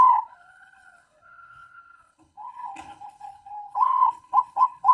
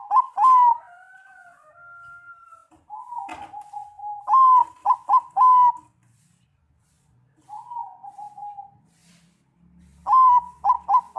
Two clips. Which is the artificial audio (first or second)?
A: first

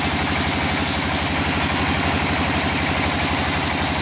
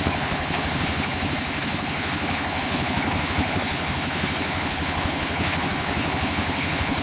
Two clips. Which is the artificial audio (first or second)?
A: second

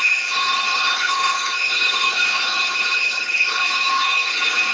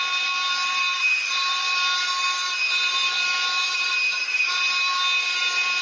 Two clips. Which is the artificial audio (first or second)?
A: first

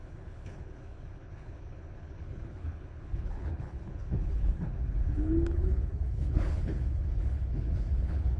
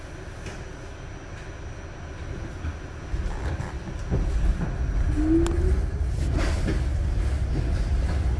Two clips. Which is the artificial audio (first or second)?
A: first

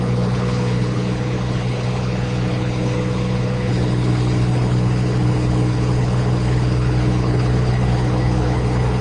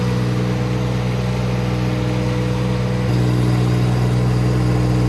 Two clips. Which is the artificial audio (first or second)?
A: first